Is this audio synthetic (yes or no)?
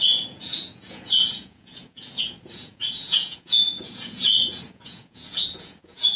yes